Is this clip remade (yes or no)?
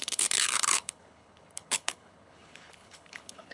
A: yes